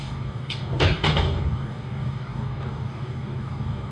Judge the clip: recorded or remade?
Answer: remade